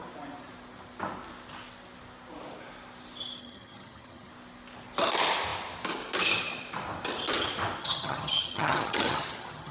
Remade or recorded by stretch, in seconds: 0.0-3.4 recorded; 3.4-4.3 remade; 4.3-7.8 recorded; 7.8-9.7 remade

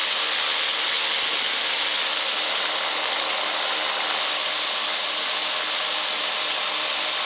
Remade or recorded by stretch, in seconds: 0.0-7.2 recorded